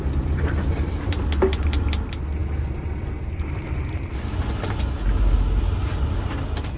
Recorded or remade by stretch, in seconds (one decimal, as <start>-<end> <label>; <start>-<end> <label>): 0.0-6.8 recorded